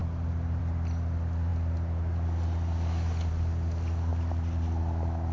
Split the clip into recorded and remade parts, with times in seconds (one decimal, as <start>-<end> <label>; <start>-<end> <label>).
0.0-5.3 recorded